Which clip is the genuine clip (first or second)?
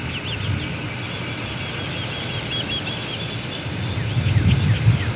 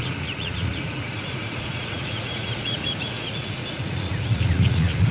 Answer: first